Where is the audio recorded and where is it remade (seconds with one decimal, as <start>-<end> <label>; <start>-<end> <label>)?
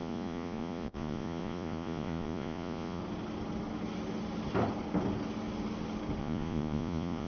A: 0.0-3.0 remade; 3.0-6.2 recorded; 6.2-7.3 remade